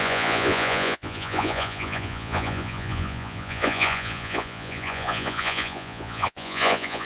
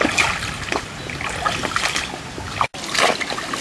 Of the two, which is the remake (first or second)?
first